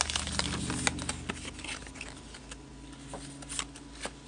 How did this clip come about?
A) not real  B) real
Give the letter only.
B